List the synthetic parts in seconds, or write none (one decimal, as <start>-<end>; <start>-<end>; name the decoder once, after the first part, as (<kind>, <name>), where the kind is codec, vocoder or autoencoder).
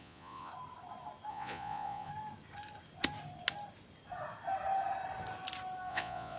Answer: 0.0-0.5 (vocoder, Vocos); 1.3-2.1; 5.9-6.4